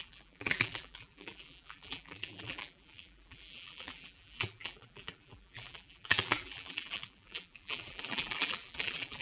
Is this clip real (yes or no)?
no